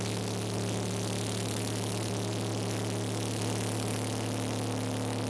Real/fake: real